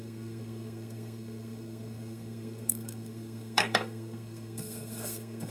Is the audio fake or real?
fake